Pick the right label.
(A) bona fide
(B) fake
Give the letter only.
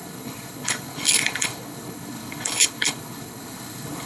B